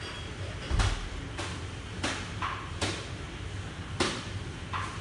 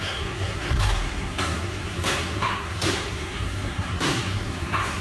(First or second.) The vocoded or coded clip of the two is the second